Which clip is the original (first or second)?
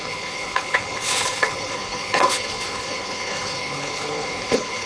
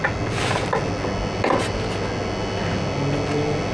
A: second